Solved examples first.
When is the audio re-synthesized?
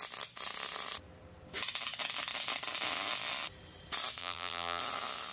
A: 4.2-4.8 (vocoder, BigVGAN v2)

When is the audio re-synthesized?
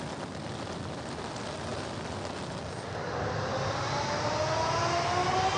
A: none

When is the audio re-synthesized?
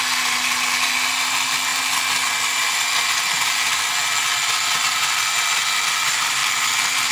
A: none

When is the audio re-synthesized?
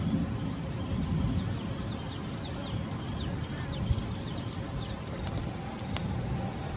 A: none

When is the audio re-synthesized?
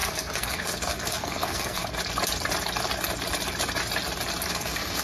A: 0.0-1.8 (codec, SNAC); 4.5-5.0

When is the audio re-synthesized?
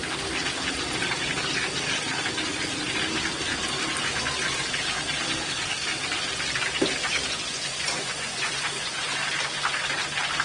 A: 7.0-9.2 (vocoder, Vocos)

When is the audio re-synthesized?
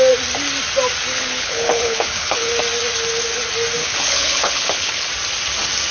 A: 1.1-2.5 (codec, HILCodec); 3.8-5.1